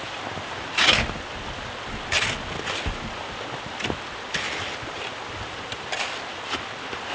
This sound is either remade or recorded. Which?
recorded